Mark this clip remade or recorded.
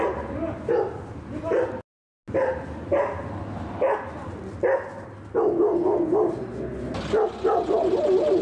recorded